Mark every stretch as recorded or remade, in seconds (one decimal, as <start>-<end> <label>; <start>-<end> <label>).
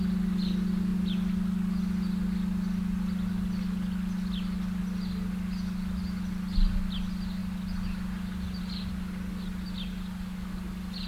0.0-11.1 recorded